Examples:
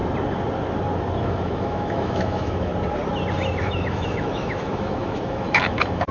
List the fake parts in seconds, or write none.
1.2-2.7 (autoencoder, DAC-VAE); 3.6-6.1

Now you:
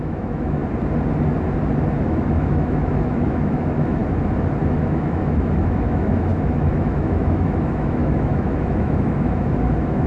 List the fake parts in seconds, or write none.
0.0-0.6 (autoencoder, DAC-VAE); 2.0-4.0; 4.8-10.1

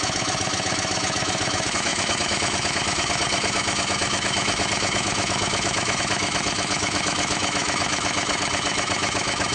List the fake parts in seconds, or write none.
0.0-9.5 (autoencoder, DAC-VAE)

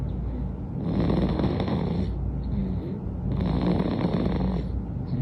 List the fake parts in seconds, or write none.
1.3-1.8 (autoencoder, DAC-VAE)

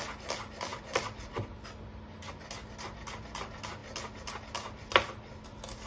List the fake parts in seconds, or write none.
none